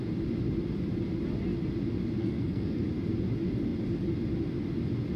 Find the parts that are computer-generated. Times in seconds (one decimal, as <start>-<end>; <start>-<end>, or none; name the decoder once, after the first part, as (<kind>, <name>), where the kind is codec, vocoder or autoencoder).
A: 2.2-2.8 (codec, SNAC)